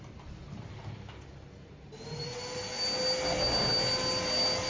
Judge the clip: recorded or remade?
recorded